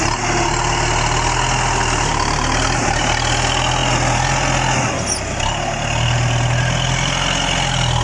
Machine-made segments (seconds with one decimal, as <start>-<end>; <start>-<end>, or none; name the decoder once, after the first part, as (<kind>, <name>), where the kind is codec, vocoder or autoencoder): none

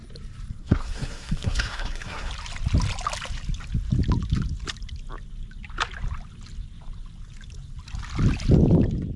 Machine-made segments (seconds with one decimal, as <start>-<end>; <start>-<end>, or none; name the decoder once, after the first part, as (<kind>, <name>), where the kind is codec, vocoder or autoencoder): 0.6-2.3 (codec, SNAC)

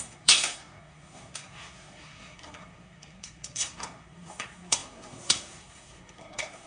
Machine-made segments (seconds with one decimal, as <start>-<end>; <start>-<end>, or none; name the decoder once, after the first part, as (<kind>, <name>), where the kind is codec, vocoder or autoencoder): 0.0-6.7 (codec, SNAC)

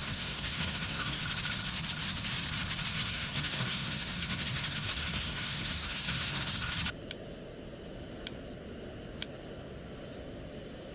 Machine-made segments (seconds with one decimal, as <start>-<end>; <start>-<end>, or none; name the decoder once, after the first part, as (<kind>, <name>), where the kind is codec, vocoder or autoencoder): 0.0-1.2 (codec, SNAC); 2.9-6.7

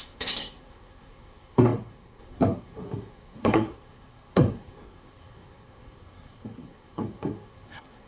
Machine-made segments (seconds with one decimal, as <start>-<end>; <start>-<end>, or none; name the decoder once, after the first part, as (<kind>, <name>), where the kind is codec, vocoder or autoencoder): 0.0-8.1 (codec, SNAC)

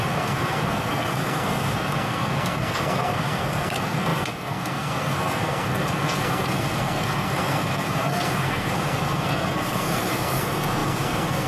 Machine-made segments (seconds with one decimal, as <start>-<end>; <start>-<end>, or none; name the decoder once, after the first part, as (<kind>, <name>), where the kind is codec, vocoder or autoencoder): 0.0-11.5 (codec, SNAC)

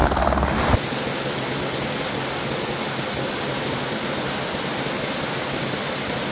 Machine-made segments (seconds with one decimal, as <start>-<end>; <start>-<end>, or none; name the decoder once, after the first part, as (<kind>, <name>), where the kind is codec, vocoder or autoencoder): none

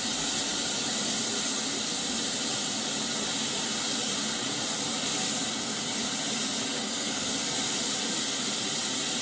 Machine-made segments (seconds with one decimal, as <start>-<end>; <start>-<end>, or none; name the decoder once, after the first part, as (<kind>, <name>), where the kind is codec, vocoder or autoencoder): 6.8-7.3 (codec, SNAC)